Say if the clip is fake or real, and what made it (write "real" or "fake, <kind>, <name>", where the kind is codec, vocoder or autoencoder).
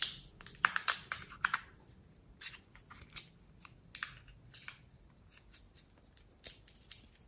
real